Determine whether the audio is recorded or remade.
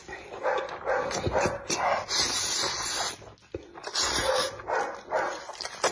recorded